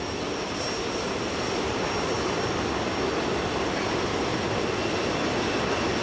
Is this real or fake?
real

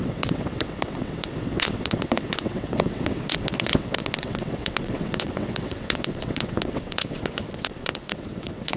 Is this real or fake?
fake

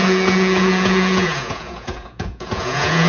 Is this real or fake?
fake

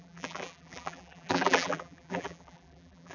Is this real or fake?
fake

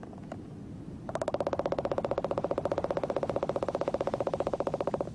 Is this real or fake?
real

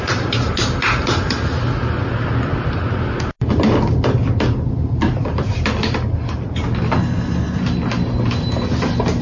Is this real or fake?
real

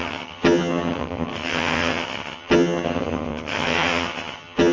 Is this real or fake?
fake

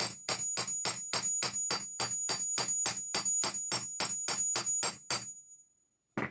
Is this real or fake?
real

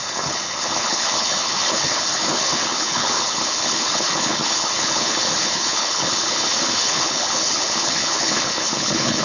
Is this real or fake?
fake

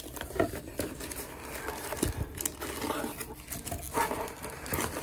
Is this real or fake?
real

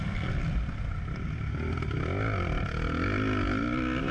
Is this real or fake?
real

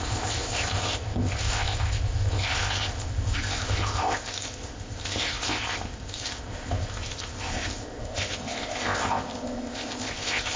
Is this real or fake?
fake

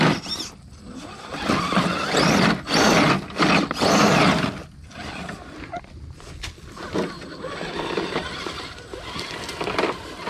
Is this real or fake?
real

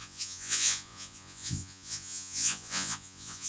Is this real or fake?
fake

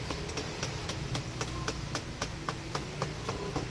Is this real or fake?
real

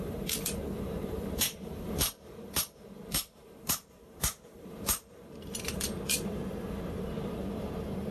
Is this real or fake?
fake